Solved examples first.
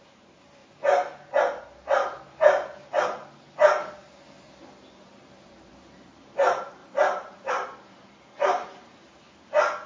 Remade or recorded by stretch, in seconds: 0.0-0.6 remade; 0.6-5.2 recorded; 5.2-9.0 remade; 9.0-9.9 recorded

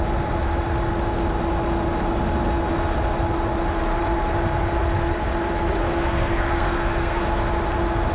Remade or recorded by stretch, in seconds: 0.0-5.8 recorded; 5.8-7.2 remade; 7.2-8.1 recorded

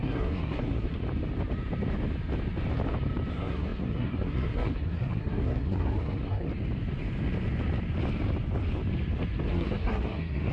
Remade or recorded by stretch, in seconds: 0.0-1.0 remade; 1.0-3.3 recorded; 3.3-6.5 remade; 6.5-9.5 recorded; 9.5-10.5 remade

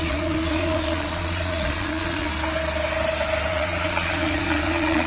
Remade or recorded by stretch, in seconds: 0.0-2.3 remade; 2.3-3.5 recorded; 3.5-5.1 remade

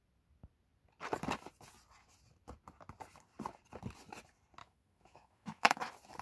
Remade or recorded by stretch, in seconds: 0.0-4.6 recorded; 4.6-5.8 remade; 5.8-6.2 recorded